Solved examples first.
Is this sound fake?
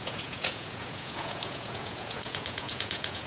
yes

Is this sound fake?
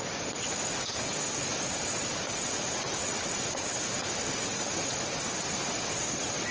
no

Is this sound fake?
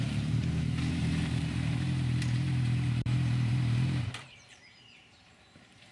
yes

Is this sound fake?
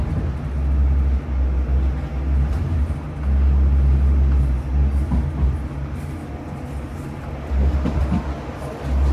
no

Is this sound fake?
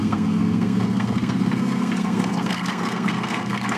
yes